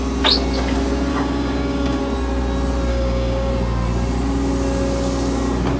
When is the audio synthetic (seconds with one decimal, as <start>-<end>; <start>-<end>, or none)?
1.1-2.0; 2.9-3.5